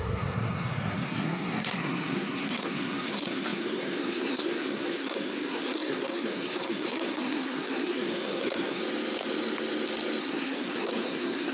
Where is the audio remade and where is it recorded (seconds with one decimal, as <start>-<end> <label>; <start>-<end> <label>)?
0.0-8.8 remade; 8.8-10.2 recorded; 10.2-11.5 remade